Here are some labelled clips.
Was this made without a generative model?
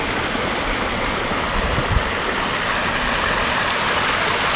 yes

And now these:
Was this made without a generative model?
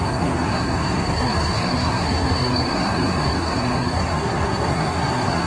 no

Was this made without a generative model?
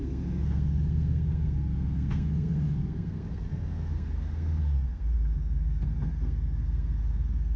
no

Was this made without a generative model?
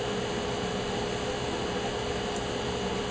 yes